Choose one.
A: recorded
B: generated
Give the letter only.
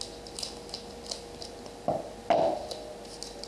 A